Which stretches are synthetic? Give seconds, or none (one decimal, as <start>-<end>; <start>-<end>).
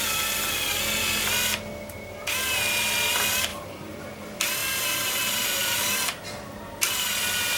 3.5-4.0